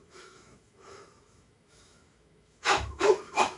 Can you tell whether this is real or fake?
fake